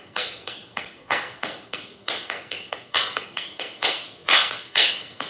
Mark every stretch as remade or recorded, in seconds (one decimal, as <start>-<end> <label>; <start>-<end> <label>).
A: 0.0-5.3 remade